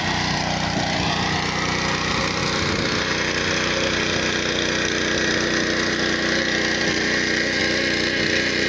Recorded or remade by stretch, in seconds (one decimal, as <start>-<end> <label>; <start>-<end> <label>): 0.0-8.7 recorded